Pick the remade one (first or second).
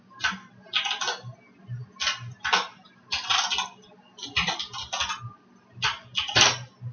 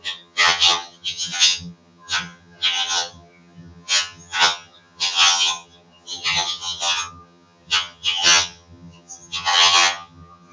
second